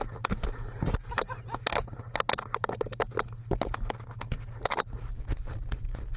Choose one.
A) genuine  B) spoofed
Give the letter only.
A